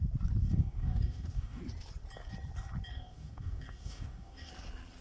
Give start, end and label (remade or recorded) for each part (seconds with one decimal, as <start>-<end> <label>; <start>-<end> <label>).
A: 0.0-0.4 recorded; 0.4-1.6 remade; 1.6-2.9 recorded; 2.9-4.5 remade; 4.5-5.0 recorded

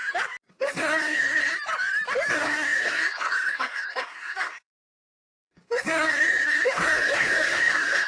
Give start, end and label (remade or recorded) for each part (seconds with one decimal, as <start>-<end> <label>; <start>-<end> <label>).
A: 0.0-0.5 recorded; 0.5-1.5 remade; 1.5-2.3 recorded; 2.3-8.1 remade